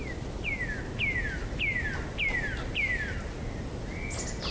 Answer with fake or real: real